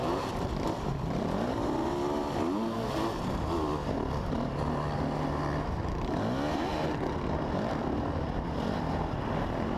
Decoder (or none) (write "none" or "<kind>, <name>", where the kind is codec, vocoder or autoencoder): none